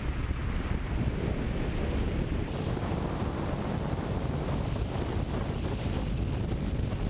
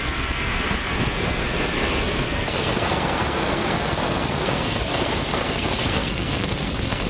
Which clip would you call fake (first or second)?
second